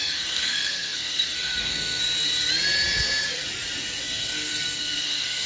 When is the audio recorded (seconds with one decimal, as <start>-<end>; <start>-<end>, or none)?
2.0-4.0